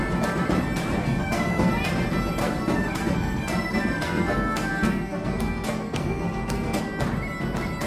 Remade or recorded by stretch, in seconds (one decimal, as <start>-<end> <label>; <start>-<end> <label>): 0.0-1.0 recorded; 1.0-1.7 remade; 1.7-2.4 recorded; 2.4-6.8 remade; 6.8-7.9 recorded